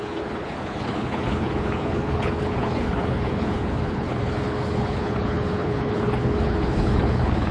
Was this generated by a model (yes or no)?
yes